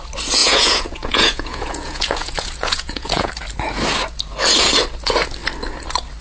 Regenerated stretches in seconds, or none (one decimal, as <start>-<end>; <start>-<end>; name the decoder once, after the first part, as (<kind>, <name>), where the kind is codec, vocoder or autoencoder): 0.4-3.3 (vocoder, Vocos)